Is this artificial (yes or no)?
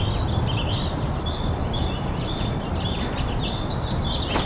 no